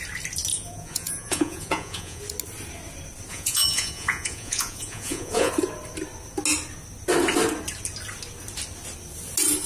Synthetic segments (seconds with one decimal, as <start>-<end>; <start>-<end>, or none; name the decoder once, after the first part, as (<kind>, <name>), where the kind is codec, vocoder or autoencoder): 0.5-2.2 (vocoder, Vocos); 3.3-5.5